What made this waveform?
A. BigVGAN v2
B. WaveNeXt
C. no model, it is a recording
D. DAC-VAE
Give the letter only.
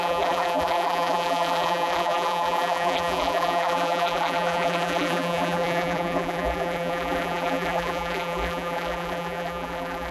A